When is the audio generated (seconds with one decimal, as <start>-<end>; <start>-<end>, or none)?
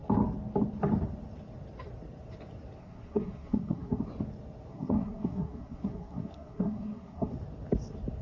2.8-4.0; 4.7-7.3